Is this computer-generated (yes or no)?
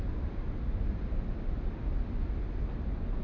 no